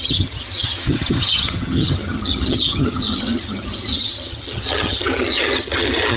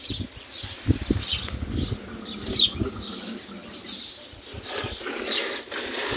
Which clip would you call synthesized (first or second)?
first